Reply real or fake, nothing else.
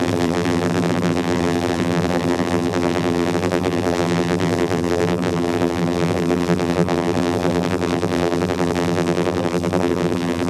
fake